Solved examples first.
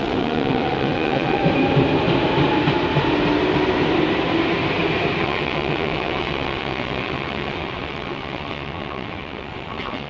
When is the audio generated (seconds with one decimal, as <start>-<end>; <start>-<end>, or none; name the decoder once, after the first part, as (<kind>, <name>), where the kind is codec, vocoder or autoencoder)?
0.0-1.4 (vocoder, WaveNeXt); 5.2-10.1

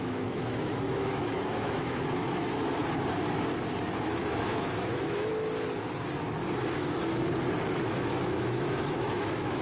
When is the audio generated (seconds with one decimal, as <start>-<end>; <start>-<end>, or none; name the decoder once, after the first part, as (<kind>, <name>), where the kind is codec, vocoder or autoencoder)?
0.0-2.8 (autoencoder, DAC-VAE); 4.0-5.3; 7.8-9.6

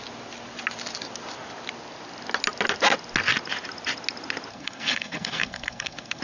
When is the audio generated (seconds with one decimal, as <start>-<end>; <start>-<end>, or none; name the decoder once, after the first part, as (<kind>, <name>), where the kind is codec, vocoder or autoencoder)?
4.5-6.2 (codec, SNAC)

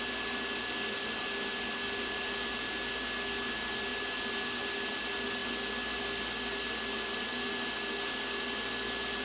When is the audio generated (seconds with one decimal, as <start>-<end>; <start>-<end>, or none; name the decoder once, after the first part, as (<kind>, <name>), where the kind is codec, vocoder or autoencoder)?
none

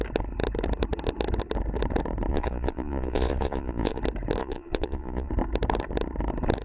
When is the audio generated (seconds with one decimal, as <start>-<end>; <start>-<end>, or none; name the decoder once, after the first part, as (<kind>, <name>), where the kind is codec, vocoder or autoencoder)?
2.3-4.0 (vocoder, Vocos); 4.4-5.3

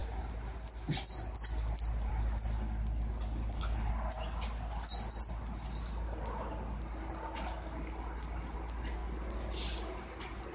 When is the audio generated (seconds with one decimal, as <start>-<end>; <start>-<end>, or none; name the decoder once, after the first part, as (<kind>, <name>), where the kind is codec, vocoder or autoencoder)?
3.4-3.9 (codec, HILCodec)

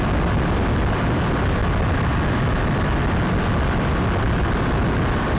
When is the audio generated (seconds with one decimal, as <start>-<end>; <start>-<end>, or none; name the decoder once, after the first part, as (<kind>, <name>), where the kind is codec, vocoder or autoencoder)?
none

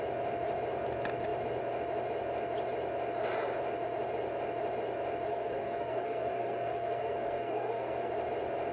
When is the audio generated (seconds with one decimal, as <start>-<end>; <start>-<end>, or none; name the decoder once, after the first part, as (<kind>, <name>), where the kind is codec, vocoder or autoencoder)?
5.3-8.1 (codec, SNAC)